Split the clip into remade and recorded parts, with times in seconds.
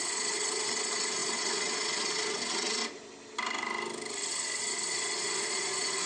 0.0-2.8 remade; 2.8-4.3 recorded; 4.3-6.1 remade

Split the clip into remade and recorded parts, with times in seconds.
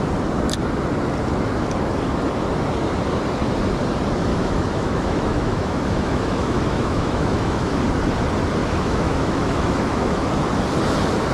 0.0-4.3 recorded; 4.3-7.8 remade; 7.8-8.6 recorded; 8.6-10.5 remade; 10.5-11.3 recorded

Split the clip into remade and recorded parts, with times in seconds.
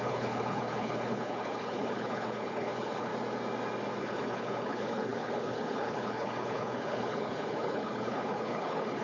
0.0-3.1 remade; 3.1-4.0 recorded; 4.0-9.0 remade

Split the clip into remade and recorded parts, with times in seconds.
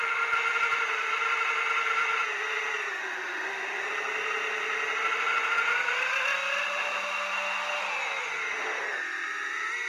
0.0-3.0 recorded; 3.0-3.8 remade; 3.8-9.9 recorded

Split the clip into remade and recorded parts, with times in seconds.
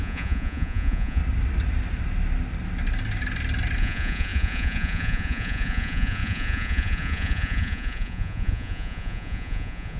0.0-1.2 remade; 1.2-3.8 recorded; 3.8-10.0 remade